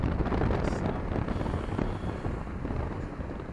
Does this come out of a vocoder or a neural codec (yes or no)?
no